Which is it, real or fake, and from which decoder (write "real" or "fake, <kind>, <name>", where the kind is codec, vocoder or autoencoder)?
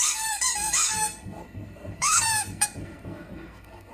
fake, codec, SNAC